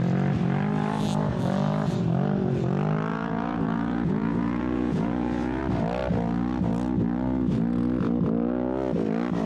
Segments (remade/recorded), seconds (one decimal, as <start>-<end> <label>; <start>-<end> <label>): 0.0-3.1 recorded; 3.1-5.6 remade; 5.6-9.5 recorded